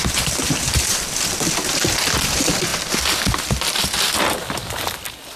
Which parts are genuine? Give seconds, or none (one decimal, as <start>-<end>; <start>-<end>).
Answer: 0.0-5.4